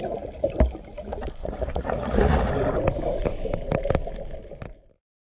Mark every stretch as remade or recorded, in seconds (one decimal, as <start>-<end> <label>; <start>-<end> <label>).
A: 0.0-1.4 recorded; 1.4-2.5 remade; 2.5-5.4 recorded